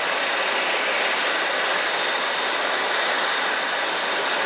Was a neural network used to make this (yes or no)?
no